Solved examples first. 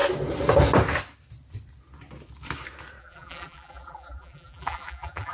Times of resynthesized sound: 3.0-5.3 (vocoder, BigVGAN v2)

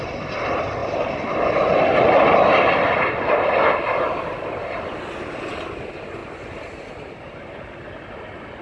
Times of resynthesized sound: none

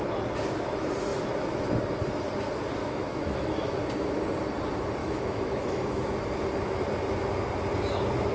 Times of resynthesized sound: 2.8-3.8 (autoencoder, DAC-VAE); 5.0-6.2

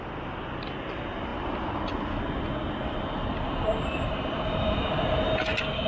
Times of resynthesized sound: none

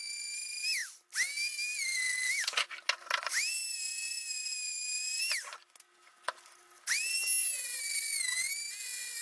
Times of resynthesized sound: none

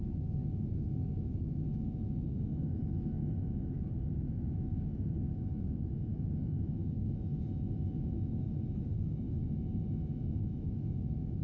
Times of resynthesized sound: 0.0-9.4 (autoencoder, DAC-VAE); 10.4-11.4

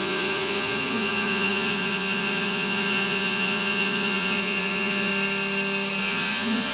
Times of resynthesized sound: 0.0-5.1 (vocoder, Vocos); 6.0-6.7

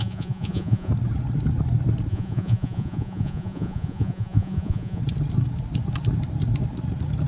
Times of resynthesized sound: 0.0-0.9 (vocoder, Vocos); 2.1-5.0